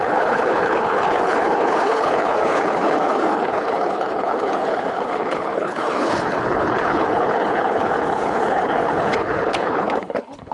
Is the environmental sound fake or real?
fake